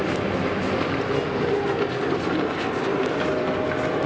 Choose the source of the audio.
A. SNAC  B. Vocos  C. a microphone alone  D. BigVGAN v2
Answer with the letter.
C